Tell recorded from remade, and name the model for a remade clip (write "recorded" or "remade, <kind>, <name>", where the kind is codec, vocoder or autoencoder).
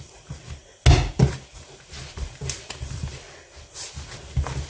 recorded